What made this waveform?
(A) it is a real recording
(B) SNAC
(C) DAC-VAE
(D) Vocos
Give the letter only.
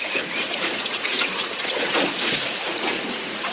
D